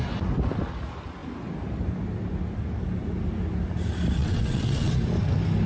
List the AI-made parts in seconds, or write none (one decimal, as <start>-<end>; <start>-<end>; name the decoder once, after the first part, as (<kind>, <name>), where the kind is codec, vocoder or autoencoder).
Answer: 4.2-4.9 (vocoder, WaveNeXt)